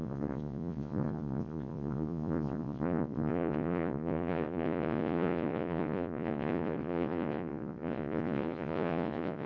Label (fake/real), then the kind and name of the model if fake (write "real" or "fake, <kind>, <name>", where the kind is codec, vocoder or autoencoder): fake, vocoder, Vocos